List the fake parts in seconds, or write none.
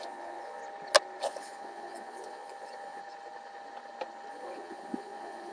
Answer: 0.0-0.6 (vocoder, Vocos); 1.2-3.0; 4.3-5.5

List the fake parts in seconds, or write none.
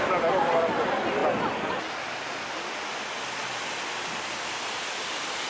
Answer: none